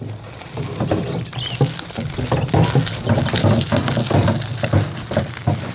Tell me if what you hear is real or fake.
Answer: real